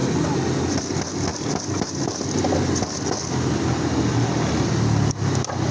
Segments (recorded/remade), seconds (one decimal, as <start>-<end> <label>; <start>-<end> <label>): 0.0-5.7 recorded